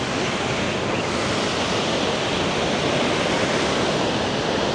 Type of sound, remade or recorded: recorded